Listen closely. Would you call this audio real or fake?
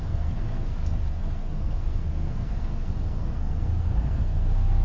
fake